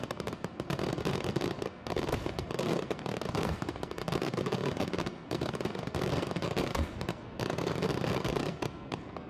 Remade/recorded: remade